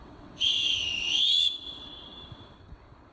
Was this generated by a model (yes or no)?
yes